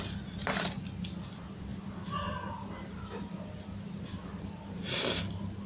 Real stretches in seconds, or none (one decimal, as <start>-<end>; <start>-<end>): 0.0-5.7

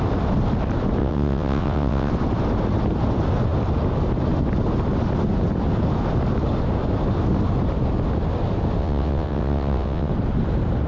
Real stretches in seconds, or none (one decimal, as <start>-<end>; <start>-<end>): 0.0-1.0; 2.1-8.8; 10.1-10.9